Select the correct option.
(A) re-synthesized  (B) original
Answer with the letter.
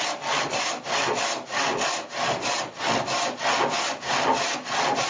B